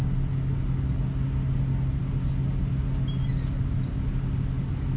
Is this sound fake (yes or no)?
no